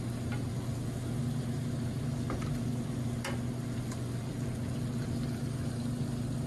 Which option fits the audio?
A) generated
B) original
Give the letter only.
B